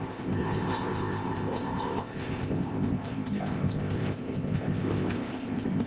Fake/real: fake